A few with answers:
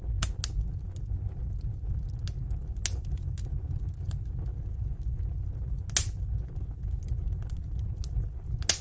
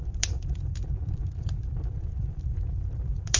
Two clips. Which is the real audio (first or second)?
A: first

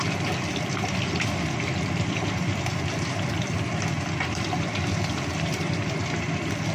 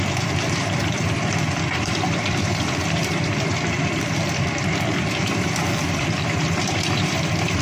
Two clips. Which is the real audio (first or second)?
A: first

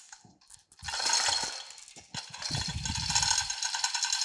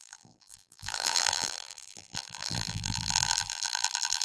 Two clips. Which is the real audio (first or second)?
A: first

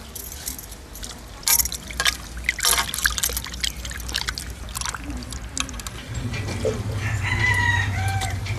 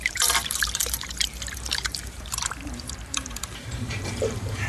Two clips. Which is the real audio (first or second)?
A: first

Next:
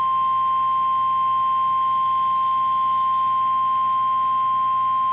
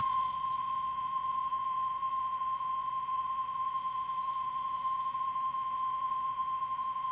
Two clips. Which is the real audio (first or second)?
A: first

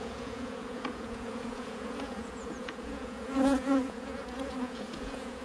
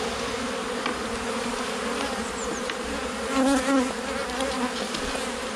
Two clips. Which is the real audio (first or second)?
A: second